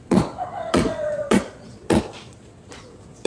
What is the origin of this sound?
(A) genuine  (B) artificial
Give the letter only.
B